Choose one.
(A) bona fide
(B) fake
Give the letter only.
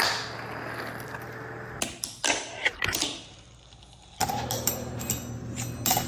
A